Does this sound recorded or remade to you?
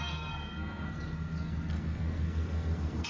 remade